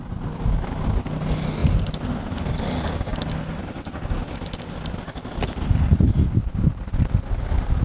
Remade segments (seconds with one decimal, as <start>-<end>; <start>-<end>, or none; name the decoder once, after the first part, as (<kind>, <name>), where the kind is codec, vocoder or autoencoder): none